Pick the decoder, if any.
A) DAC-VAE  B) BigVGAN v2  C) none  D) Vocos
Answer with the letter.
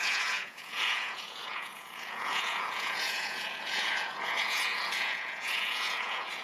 D